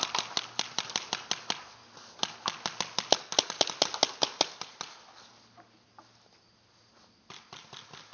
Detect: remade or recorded recorded